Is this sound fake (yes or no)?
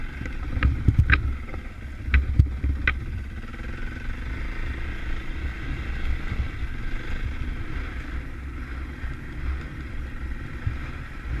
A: no